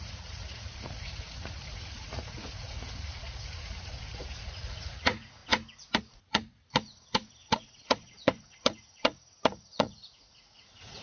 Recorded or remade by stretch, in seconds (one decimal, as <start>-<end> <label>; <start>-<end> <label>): 0.0-5.4 remade; 5.4-6.0 recorded; 6.0-11.0 remade